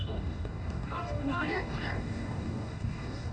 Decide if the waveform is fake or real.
fake